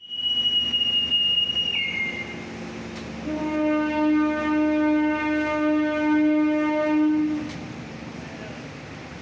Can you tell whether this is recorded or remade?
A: recorded